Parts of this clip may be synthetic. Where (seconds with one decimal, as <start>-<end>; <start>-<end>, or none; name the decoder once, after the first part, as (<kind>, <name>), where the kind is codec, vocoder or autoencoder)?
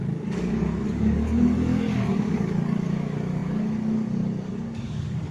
0.0-5.3 (codec, DAC)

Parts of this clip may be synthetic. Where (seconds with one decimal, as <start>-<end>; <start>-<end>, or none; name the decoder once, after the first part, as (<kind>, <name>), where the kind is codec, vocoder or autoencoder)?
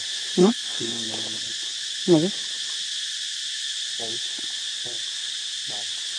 0.4-1.1 (codec, SNAC)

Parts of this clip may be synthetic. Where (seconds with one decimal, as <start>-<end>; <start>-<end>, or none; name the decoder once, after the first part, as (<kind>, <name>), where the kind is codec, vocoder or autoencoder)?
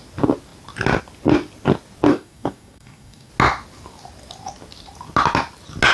2.1-3.3 (codec, DAC)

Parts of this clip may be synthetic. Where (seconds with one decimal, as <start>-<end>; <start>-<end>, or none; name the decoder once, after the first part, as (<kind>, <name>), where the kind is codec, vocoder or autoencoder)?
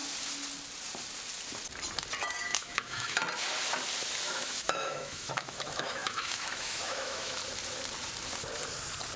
2.4-3.2 (autoencoder, DAC-VAE); 4.2-7.4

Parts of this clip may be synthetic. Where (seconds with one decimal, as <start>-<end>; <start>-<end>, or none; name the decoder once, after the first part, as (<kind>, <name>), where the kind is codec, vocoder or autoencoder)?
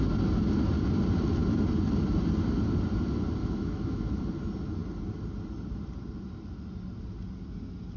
3.4-4.1 (autoencoder, DAC-VAE)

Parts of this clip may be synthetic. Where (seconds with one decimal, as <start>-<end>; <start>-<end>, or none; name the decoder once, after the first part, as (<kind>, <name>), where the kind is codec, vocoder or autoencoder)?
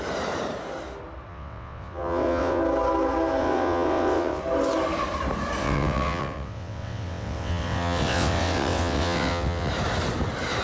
1.3-2.6 (vocoder, WaveNeXt); 3.4-4.4; 5.6-9.7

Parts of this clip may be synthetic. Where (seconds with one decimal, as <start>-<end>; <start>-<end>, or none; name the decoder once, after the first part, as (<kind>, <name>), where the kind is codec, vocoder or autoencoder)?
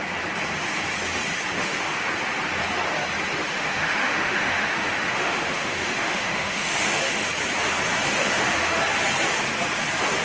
1.6-2.1 (autoencoder, DAC-VAE); 3.5-7.3; 8.2-8.8